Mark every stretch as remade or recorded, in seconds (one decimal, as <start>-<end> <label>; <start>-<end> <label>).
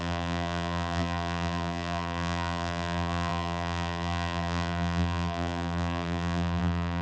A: 0.0-7.0 remade